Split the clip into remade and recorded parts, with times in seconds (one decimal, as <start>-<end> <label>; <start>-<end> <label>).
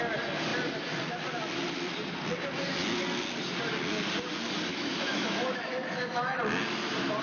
0.0-4.7 recorded; 4.7-6.4 remade; 6.4-7.2 recorded